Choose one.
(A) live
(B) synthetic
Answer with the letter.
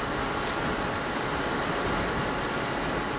A